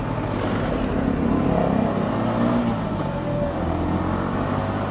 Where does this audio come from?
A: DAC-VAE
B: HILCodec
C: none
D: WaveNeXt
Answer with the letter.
C